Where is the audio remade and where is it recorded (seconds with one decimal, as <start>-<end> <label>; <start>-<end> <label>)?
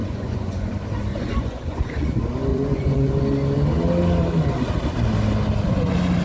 0.0-0.7 remade; 0.7-1.1 recorded; 1.1-2.1 remade; 2.1-2.5 recorded; 2.5-3.1 remade; 3.1-6.2 recorded